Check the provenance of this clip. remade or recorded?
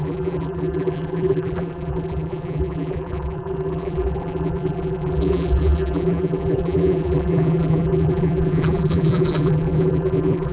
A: remade